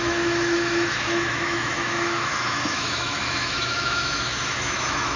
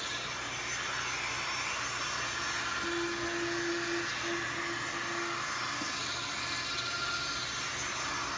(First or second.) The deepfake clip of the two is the first